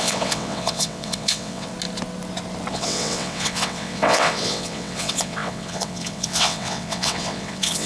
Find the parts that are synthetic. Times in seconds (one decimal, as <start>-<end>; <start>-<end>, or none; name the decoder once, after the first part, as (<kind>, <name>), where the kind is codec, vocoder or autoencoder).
0.0-1.7 (vocoder, WaveNeXt); 2.7-7.9